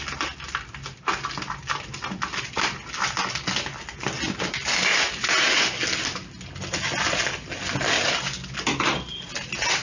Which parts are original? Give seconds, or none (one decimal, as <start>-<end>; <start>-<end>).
0.0-9.8